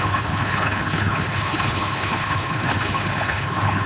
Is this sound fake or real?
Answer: fake